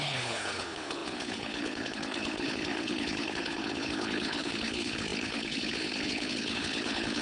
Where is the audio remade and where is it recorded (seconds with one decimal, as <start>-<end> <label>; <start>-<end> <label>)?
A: 0.0-7.2 remade